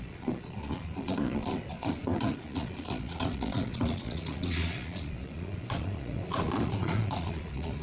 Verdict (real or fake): fake